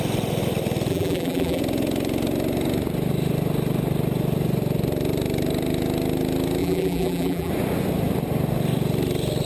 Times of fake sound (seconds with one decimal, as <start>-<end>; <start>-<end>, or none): 0.9-1.6; 6.6-7.5